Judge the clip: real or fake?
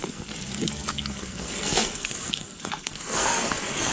fake